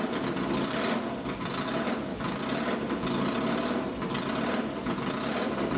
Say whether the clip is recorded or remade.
recorded